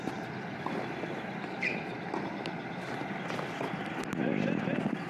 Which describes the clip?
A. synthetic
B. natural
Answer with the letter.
B